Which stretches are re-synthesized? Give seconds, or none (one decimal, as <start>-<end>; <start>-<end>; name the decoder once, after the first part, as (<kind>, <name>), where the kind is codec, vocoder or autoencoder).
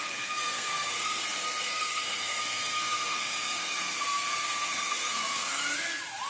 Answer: 0.0-5.6 (codec, SNAC)